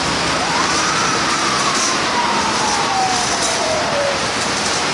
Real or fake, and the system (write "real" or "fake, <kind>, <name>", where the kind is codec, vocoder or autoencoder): fake, vocoder, BigVGAN v2